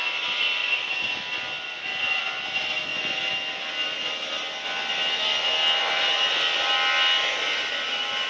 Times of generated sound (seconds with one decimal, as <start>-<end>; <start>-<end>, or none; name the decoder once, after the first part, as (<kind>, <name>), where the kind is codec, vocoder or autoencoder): none